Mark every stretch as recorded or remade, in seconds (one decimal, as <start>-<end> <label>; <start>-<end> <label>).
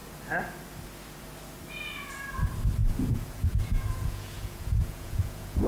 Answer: 0.0-2.8 recorded; 2.8-5.7 remade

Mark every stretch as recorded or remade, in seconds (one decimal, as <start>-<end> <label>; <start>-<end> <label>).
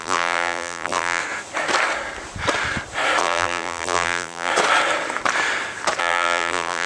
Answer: 0.0-1.2 remade; 1.2-3.2 recorded; 3.2-4.5 remade; 4.5-6.0 recorded; 6.0-6.9 remade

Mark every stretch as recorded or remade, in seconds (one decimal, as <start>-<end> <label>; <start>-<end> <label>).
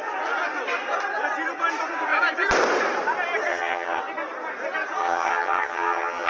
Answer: 0.0-3.5 recorded; 3.5-4.0 remade; 4.0-5.0 recorded; 5.0-6.3 remade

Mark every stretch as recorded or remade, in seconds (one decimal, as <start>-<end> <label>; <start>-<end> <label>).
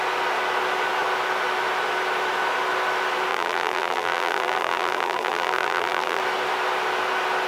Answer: 0.0-3.3 recorded; 3.3-6.2 remade; 6.2-7.5 recorded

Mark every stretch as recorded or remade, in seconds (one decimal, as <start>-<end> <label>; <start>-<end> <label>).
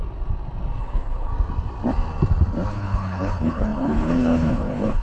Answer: 0.0-0.8 recorded; 0.8-1.3 remade; 1.3-2.7 recorded; 2.7-5.0 remade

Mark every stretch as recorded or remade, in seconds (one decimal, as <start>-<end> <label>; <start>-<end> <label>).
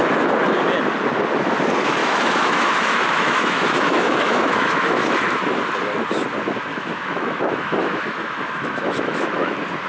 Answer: 0.0-2.0 recorded; 2.0-5.3 remade; 5.3-6.7 recorded; 6.7-9.5 remade; 9.5-9.9 recorded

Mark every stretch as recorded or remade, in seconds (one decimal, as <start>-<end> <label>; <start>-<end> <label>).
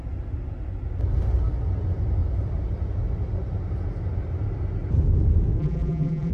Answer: 0.0-5.6 recorded; 5.6-6.3 remade